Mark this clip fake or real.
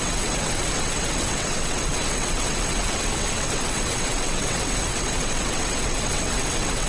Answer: fake